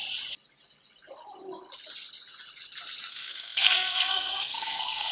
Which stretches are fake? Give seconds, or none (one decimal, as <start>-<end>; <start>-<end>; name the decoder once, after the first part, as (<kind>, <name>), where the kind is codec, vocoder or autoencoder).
3.1-5.1 (codec, SNAC)